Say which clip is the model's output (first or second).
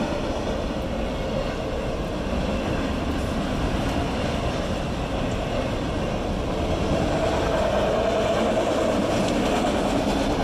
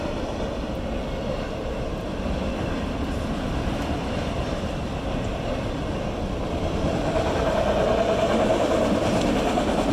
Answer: second